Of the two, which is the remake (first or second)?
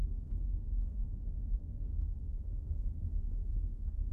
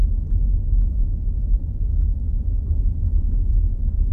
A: first